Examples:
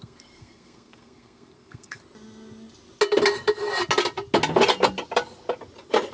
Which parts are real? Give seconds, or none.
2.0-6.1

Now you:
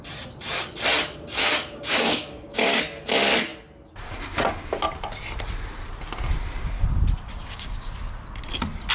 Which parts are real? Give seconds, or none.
0.0-1.4; 2.8-7.4; 7.9-8.9